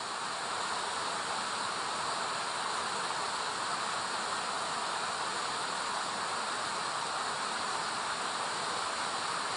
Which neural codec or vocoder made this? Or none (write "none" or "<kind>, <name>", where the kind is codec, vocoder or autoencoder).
none